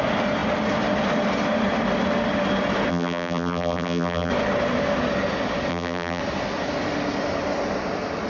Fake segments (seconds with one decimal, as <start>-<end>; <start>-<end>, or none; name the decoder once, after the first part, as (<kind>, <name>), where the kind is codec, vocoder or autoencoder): 2.9-4.3 (vocoder, BigVGAN v2); 5.7-6.2